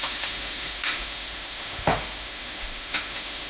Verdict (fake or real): fake